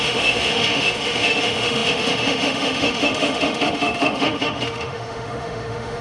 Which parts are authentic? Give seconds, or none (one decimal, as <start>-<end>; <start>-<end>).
none